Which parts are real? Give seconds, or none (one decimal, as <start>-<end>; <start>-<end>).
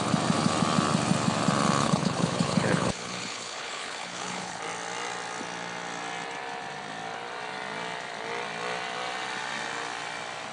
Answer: 0.0-1.8; 4.6-10.5